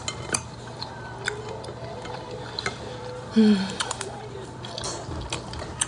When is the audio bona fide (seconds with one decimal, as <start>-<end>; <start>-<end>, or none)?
0.0-1.8; 4.6-5.9